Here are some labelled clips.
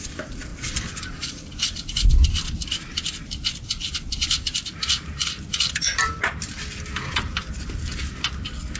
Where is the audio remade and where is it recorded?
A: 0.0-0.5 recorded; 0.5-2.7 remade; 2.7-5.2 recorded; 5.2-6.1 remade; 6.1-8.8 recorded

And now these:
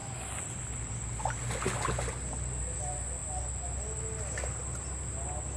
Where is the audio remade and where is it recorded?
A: 0.0-5.6 recorded

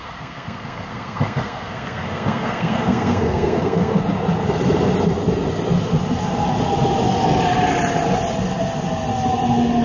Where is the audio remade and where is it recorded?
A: 0.0-4.0 remade; 4.0-9.8 recorded

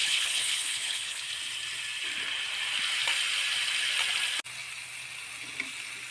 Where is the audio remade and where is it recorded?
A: 0.0-1.3 remade; 1.3-6.1 recorded

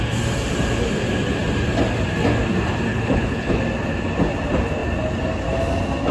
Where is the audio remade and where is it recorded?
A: 0.0-2.9 recorded; 2.9-3.6 remade; 3.6-6.1 recorded